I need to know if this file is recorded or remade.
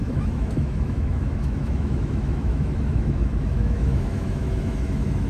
remade